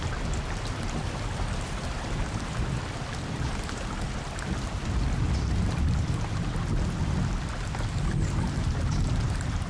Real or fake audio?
real